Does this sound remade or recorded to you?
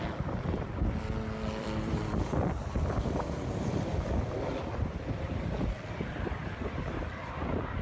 remade